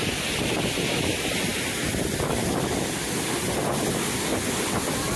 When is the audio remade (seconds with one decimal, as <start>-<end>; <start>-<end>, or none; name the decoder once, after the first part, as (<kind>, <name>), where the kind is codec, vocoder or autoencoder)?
none